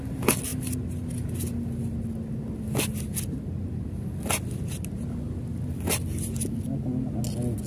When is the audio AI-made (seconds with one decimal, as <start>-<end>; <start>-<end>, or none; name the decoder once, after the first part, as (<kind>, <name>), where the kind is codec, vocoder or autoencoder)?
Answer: 0.5-4.2 (vocoder, BigVGAN v2)